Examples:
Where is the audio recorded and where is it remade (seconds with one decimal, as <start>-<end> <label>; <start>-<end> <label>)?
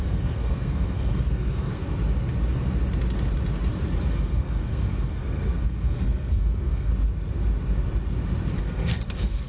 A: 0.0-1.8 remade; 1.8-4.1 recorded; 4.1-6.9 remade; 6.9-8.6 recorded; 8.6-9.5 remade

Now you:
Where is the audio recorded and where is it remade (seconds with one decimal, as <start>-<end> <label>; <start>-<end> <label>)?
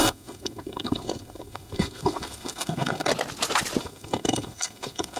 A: 0.0-3.1 remade; 3.1-3.8 recorded; 3.8-5.2 remade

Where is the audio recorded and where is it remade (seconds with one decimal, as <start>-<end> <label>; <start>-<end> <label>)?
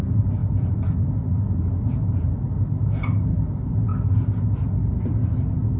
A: 0.0-5.8 recorded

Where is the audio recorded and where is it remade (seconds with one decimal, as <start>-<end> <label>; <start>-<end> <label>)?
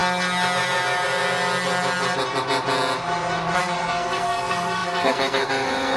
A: 0.0-3.6 recorded; 3.6-6.0 remade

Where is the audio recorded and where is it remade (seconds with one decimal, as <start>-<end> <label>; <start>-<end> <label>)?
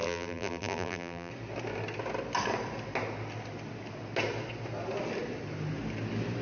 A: 0.0-1.3 remade; 1.3-6.4 recorded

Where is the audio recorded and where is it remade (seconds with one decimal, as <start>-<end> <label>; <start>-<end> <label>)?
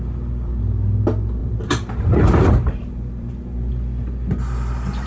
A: 0.0-1.4 recorded; 1.4-3.7 remade; 3.7-5.1 recorded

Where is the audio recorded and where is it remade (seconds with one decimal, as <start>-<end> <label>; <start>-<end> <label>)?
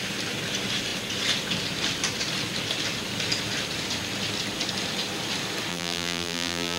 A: 0.0-5.7 recorded; 5.7-6.8 remade